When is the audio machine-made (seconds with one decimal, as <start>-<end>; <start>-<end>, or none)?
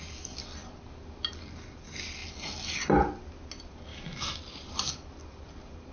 3.9-4.4